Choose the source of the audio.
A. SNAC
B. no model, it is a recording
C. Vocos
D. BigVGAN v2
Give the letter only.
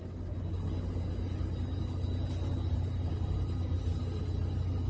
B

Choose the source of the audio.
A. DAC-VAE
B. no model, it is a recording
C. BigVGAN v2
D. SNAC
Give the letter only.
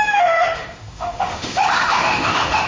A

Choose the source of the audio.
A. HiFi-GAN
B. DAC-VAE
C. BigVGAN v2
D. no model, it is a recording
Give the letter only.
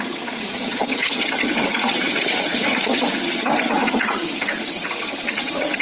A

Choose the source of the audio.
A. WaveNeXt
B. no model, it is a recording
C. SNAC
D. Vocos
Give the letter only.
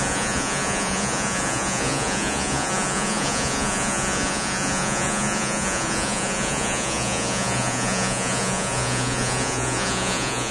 D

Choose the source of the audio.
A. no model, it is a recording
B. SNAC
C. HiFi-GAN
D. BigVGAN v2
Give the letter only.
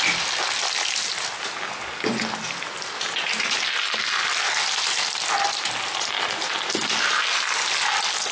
A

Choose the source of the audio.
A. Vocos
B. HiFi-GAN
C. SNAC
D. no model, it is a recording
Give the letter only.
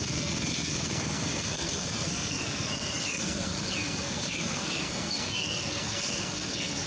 C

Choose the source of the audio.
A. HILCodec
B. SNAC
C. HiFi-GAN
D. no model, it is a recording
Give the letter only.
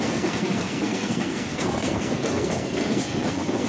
B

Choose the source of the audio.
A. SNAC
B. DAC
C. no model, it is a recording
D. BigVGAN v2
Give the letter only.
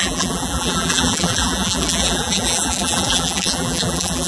D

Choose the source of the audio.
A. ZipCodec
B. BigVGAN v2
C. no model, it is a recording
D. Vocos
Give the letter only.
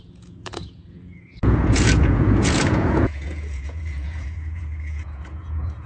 D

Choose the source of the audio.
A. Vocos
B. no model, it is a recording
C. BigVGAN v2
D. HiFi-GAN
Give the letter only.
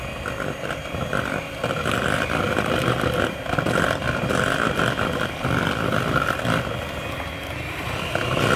C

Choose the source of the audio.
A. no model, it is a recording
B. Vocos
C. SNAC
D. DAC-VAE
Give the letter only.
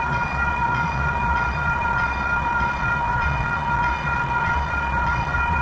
B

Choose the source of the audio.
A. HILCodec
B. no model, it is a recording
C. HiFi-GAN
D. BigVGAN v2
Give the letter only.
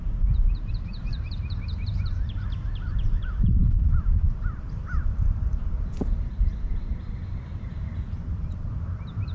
D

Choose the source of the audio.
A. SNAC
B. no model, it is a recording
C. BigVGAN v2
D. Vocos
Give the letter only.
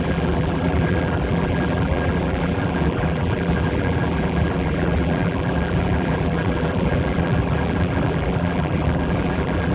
C